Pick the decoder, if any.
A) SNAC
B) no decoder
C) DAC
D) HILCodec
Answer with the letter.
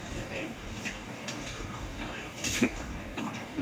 C